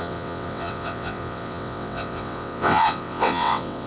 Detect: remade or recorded remade